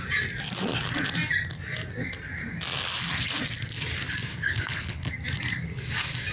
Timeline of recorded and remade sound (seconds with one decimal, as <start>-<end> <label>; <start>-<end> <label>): 0.0-4.3 recorded; 4.3-5.1 remade; 5.1-6.3 recorded